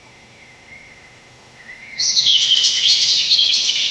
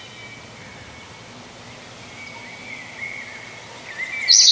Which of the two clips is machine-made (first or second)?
first